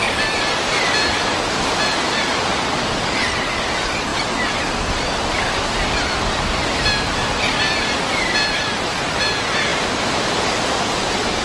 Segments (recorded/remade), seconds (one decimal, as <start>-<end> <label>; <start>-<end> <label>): 0.0-11.4 recorded